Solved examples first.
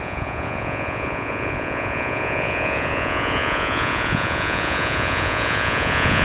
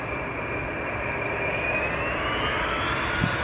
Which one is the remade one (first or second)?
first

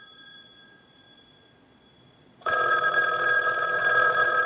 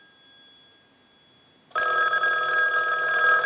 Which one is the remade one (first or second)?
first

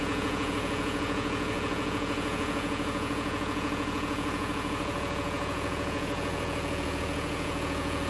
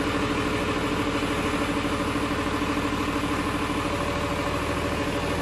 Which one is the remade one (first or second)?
first